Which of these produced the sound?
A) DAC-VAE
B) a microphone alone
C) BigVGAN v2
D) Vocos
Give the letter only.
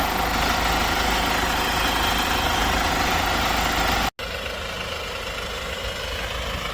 B